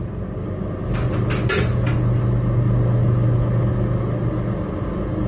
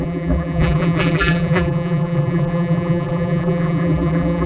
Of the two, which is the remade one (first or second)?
second